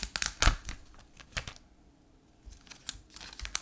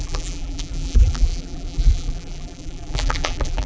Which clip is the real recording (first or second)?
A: first